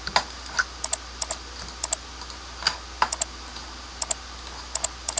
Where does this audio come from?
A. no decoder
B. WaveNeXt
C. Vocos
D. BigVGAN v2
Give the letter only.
A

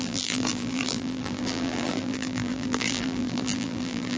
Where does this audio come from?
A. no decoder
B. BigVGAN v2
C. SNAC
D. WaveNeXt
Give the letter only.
B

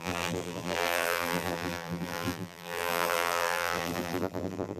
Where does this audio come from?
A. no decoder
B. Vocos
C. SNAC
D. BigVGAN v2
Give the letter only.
D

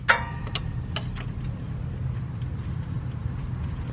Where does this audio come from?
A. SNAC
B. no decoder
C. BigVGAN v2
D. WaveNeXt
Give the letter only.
B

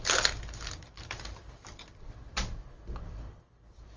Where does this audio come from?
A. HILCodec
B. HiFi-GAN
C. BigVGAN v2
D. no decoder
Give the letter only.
C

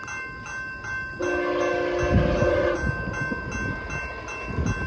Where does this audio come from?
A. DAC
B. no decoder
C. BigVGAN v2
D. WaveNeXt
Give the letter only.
B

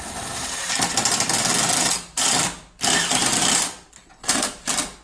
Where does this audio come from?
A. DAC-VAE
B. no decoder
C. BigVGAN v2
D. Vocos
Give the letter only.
B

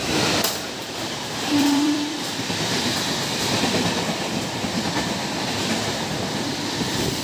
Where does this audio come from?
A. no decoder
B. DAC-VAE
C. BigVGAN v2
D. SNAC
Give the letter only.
C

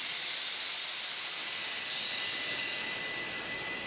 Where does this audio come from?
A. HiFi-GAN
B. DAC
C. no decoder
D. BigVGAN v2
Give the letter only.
D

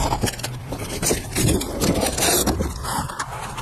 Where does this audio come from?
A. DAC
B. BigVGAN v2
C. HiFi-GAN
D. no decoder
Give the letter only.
B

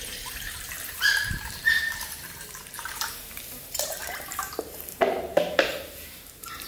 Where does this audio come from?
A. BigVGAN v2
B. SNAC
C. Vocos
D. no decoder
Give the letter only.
A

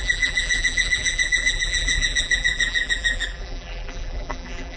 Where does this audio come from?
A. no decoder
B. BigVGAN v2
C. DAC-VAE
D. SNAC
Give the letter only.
B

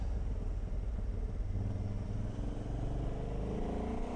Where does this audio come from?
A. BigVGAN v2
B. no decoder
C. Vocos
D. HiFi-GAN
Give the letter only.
B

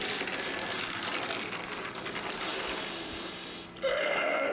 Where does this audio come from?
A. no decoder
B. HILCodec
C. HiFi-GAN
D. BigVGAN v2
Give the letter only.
A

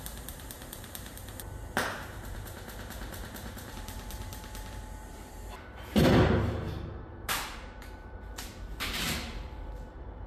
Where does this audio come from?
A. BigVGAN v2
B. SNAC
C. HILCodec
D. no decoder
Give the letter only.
A